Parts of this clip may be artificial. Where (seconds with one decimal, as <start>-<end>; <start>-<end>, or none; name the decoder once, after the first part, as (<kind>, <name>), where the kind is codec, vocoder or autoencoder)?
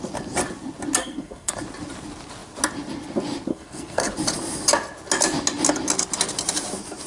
1.0-1.5 (codec, SNAC); 3.5-4.1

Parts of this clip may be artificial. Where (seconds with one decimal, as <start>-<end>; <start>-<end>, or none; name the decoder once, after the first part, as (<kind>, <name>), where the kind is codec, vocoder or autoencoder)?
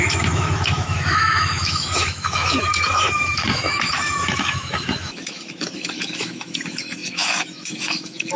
0.0-8.4 (autoencoder, DAC-VAE)